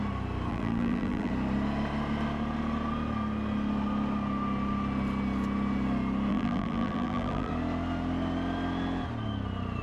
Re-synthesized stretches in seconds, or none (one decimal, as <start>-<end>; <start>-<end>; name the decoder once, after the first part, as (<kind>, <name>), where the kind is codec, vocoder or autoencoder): 0.5-1.3 (vocoder, BigVGAN v2); 6.3-7.5